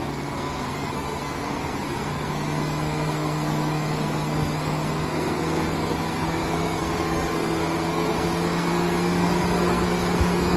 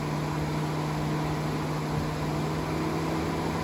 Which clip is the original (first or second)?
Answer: second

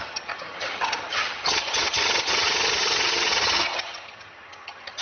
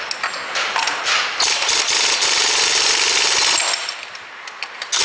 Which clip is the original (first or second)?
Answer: second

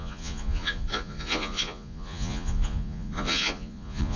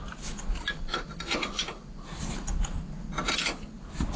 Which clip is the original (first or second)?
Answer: second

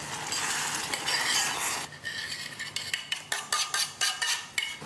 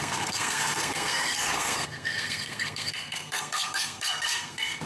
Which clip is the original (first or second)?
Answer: first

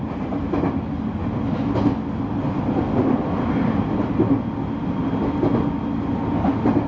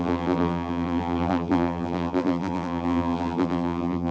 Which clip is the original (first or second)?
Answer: first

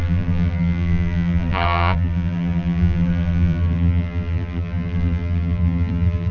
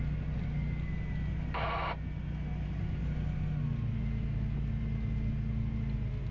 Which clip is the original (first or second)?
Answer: second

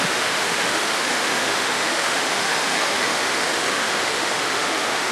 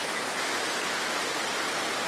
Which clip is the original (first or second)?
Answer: second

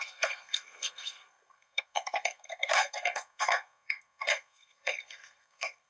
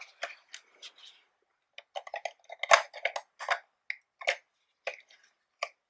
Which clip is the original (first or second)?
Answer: second